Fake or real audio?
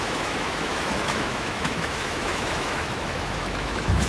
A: fake